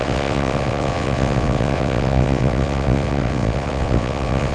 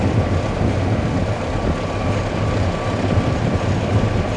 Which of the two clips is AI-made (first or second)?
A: first